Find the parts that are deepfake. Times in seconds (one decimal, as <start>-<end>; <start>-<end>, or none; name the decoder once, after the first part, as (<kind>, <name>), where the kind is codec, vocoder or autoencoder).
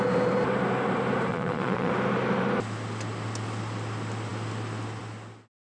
1.3-1.9 (vocoder, Vocos)